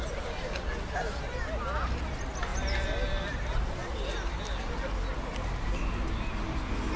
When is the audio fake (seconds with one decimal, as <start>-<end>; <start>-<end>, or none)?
2.5-3.9

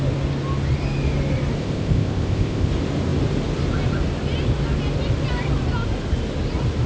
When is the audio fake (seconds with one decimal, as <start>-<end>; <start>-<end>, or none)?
1.6-2.7

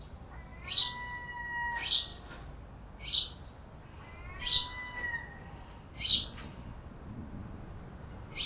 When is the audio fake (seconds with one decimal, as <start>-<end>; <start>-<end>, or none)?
none

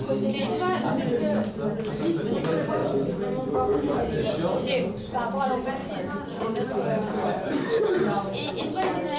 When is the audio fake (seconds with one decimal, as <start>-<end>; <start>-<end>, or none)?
5.8-8.5